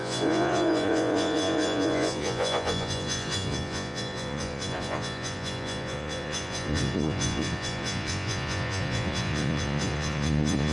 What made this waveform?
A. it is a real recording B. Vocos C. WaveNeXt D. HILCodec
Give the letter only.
B